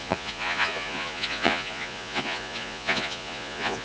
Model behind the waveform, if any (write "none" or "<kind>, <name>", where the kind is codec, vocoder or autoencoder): vocoder, Vocos